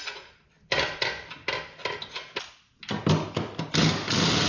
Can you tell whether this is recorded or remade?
recorded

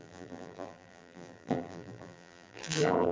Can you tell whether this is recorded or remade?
remade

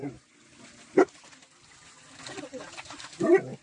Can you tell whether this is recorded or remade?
recorded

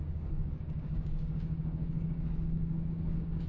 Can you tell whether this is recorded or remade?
remade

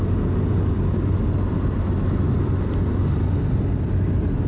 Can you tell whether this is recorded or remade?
recorded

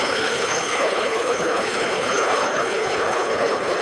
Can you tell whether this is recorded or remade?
remade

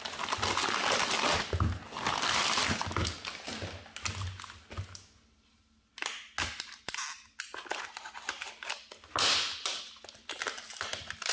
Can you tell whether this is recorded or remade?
recorded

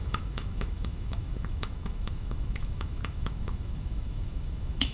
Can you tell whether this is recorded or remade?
remade